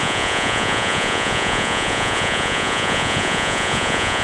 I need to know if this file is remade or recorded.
remade